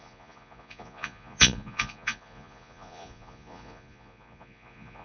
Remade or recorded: remade